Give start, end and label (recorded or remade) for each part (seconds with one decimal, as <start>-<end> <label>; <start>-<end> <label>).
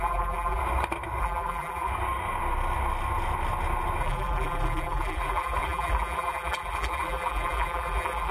0.0-0.6 remade; 0.6-1.2 recorded; 1.2-1.9 remade; 1.9-4.0 recorded; 4.0-8.3 remade